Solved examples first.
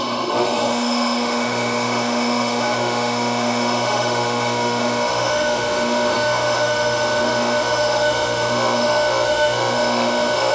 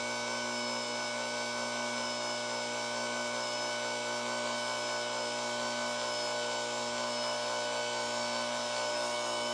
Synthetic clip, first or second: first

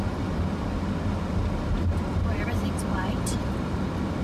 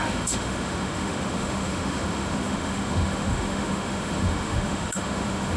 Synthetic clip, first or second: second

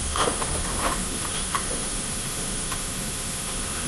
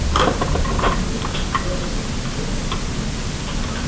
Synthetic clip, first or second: first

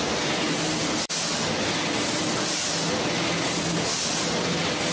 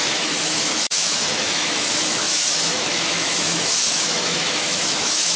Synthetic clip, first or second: second